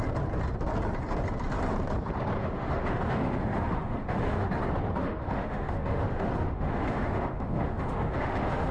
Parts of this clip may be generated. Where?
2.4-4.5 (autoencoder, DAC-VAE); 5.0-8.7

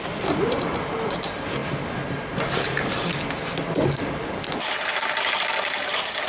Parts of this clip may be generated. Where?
none

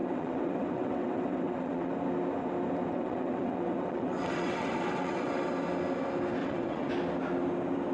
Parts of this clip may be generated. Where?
0.0-1.9 (vocoder, WaveNeXt); 2.9-5.3; 6.4-6.9

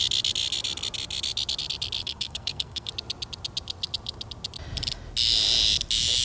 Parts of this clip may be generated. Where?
2.0-2.9 (codec, SNAC)

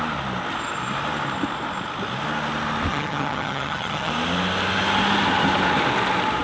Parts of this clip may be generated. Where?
2.9-4.1 (vocoder, HiFi-GAN)